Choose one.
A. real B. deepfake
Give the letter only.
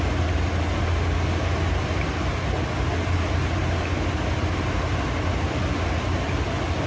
A